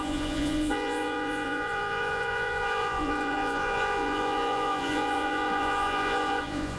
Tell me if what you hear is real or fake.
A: fake